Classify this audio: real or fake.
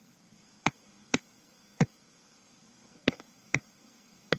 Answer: fake